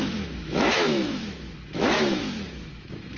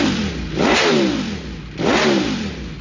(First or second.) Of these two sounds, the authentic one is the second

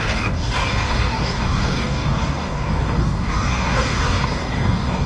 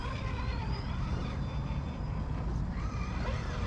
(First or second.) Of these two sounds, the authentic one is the second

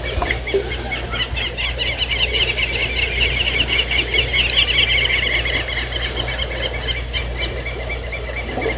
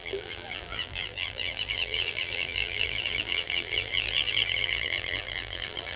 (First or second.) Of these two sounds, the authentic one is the first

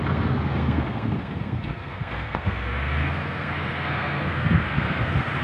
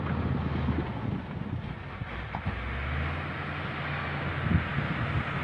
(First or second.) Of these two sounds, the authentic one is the second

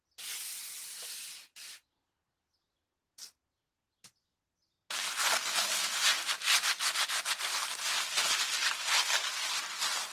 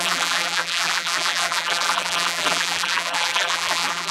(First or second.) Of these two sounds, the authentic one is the first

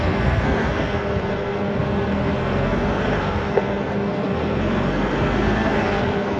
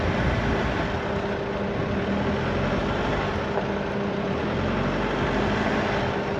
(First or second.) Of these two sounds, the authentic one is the second